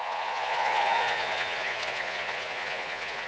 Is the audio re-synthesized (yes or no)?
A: yes